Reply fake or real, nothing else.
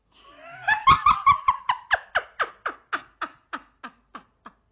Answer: real